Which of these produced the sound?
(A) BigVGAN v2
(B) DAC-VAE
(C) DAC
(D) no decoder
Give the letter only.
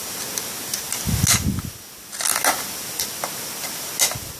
D